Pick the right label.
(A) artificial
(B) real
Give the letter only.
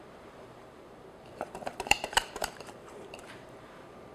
A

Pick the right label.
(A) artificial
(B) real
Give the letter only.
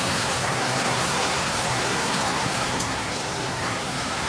A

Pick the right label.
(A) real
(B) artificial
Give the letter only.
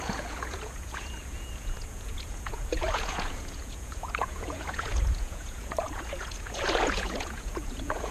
B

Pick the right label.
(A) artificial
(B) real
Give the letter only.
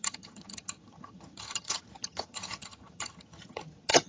A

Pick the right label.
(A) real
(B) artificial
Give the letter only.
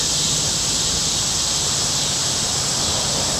A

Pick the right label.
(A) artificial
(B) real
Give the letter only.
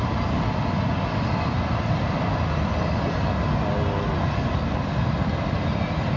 B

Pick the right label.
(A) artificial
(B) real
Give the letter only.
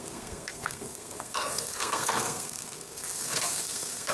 A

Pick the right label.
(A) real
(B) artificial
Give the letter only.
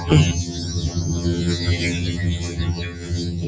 B